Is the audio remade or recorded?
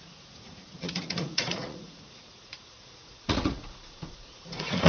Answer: remade